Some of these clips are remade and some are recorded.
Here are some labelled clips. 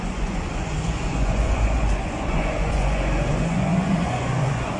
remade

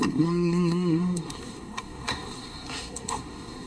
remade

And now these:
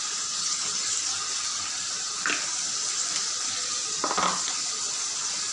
recorded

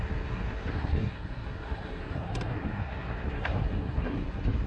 remade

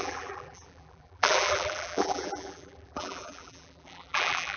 remade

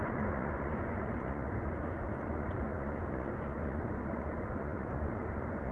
remade